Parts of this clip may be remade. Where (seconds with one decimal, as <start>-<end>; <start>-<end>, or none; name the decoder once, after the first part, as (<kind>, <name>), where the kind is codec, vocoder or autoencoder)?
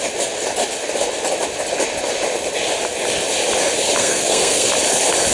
4.0-4.7 (codec, SNAC)